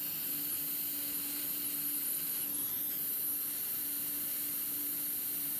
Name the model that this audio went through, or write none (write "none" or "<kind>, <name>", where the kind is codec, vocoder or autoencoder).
none